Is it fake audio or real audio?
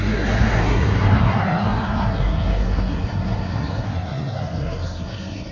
fake